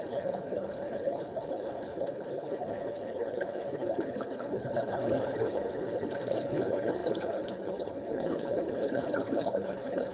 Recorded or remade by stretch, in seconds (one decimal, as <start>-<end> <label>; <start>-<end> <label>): 0.0-10.1 remade